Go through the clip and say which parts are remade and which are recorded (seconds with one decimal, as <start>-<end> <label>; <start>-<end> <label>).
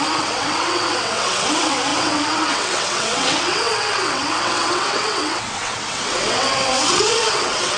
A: 0.0-7.8 remade